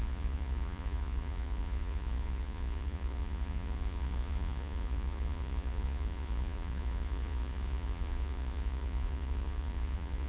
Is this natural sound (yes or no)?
no